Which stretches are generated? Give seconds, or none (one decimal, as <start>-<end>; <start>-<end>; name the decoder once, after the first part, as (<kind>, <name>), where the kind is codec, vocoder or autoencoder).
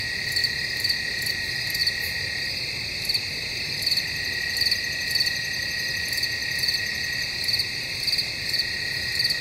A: none